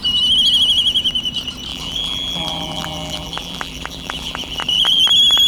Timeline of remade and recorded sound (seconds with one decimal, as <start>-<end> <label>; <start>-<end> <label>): 0.0-1.7 recorded; 1.7-5.0 remade; 5.0-5.5 recorded